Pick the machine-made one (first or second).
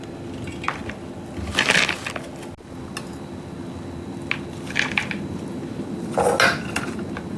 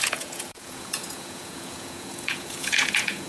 second